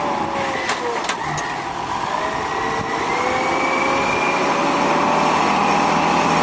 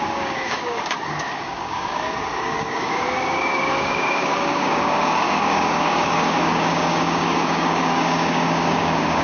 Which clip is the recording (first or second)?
first